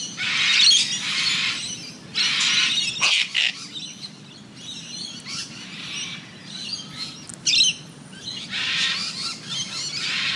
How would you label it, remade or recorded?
recorded